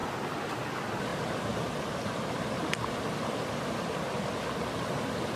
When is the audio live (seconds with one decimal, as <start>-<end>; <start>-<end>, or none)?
0.0-5.4